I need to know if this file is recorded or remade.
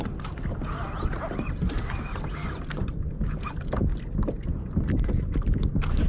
recorded